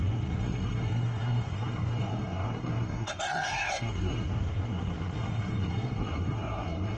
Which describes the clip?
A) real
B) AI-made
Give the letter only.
B